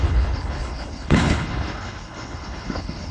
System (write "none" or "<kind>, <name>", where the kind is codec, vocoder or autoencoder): codec, HILCodec